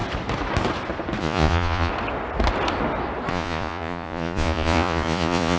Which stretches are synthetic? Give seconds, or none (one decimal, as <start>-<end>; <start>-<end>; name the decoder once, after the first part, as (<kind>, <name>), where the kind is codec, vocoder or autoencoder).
1.2-1.9 (vocoder, Vocos); 3.3-5.6